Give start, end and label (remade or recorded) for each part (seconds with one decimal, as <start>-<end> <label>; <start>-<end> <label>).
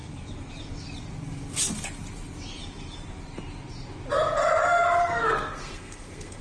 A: 0.0-5.0 recorded; 5.0-6.4 remade